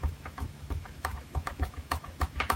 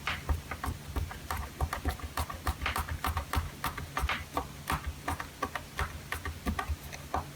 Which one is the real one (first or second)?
second